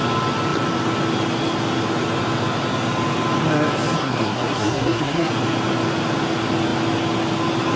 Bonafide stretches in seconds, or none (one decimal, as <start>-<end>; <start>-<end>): 0.0-4.0; 5.3-7.8

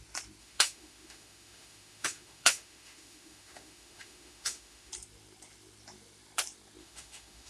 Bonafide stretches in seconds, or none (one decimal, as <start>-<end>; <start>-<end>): 0.0-0.4; 4.9-6.8

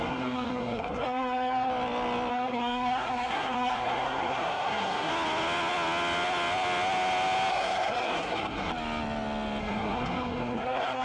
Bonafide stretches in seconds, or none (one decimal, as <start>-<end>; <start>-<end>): 1.7-2.3; 5.1-7.5; 8.7-9.6

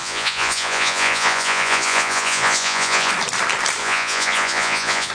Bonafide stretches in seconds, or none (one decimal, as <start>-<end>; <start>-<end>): 3.1-3.8